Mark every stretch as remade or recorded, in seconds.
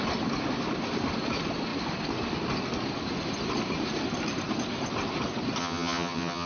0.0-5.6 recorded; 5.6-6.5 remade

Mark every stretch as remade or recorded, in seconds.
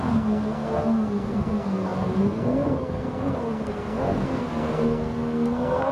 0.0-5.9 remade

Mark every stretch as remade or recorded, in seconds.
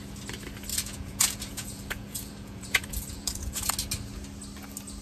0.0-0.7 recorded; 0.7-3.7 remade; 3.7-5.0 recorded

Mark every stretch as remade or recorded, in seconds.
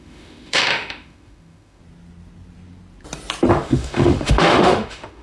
0.0-1.8 remade; 1.8-3.5 recorded; 3.5-5.2 remade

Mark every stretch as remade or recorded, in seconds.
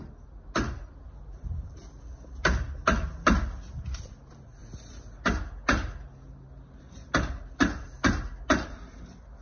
0.0-9.4 recorded